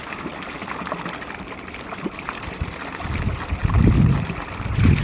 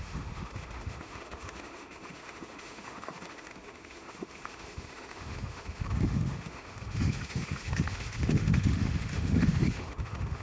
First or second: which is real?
first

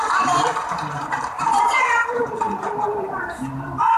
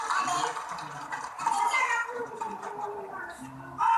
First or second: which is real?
second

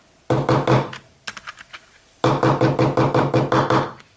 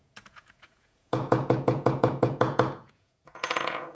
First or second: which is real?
first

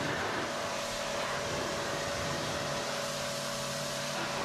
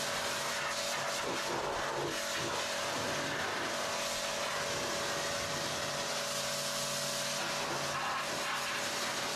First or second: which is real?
second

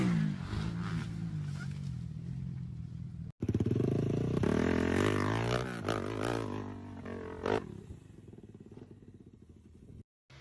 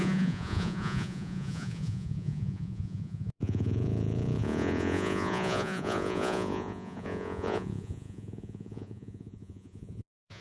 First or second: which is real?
first